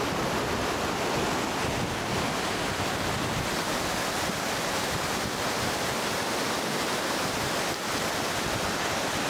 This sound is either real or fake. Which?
real